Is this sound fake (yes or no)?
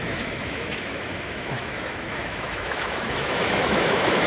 yes